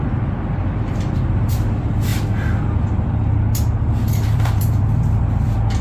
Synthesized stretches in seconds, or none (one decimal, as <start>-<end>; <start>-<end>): 0.0-2.1; 4.1-5.8